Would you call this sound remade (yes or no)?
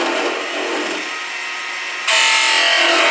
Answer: no